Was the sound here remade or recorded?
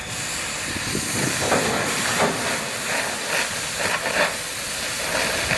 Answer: recorded